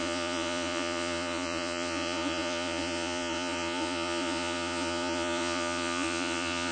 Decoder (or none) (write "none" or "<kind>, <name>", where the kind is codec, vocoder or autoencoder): vocoder, Vocos